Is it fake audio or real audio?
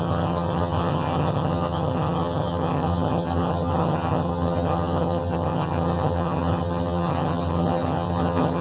fake